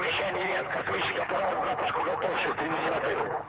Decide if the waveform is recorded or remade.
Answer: remade